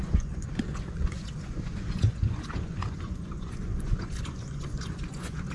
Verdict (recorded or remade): remade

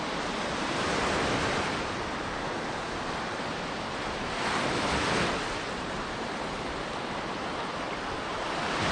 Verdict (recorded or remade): recorded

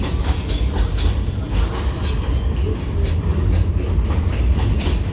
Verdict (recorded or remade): recorded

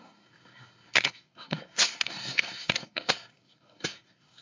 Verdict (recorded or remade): remade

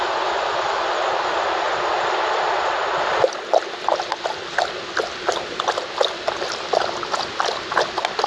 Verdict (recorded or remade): recorded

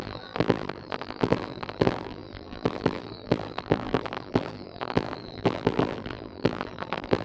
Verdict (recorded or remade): remade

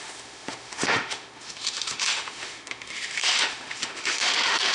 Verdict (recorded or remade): remade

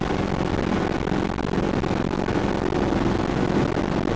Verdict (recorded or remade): recorded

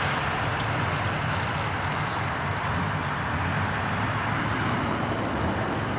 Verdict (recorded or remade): recorded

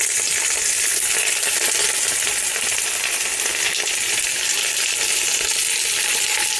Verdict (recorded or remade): remade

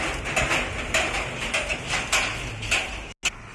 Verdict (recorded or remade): recorded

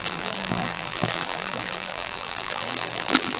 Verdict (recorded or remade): remade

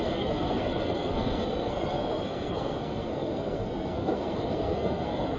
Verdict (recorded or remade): remade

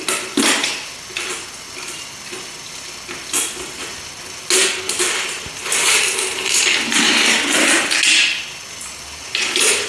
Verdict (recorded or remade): recorded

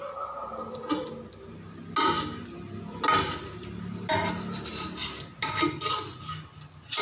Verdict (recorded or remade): recorded